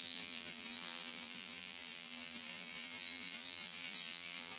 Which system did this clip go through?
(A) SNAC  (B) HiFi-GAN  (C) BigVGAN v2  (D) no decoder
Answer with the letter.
C